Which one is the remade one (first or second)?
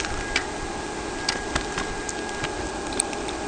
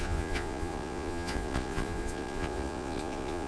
second